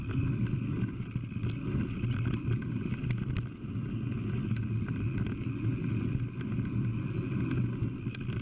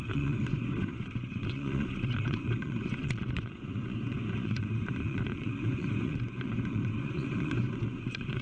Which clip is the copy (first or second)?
second